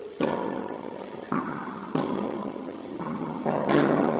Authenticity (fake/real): fake